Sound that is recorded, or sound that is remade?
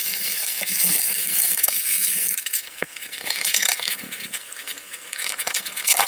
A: remade